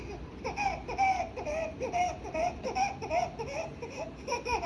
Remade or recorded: recorded